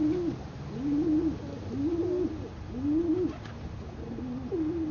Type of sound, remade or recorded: recorded